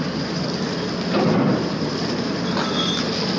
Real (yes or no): yes